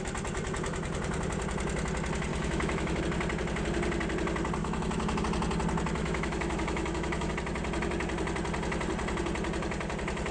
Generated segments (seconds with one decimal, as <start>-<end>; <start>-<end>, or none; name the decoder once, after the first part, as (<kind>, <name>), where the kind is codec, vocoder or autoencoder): 2.3-3.0 (autoencoder, DAC-VAE); 4.6-5.2; 6.0-7.3